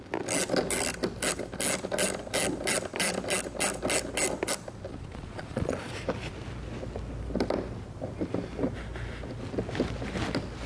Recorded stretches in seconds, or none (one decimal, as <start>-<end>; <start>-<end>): 0.0-4.9; 5.9-10.7